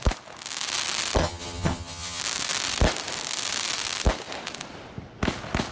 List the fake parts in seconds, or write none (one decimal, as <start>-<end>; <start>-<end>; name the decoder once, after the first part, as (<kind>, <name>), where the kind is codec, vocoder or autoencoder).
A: 1.2-2.2 (vocoder, HiFi-GAN)